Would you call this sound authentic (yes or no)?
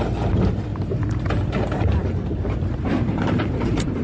no